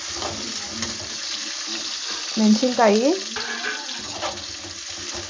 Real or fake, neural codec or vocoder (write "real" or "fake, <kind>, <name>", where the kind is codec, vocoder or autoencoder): real